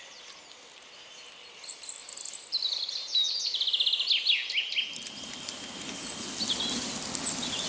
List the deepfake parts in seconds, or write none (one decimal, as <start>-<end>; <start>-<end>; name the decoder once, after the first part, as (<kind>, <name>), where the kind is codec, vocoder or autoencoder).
none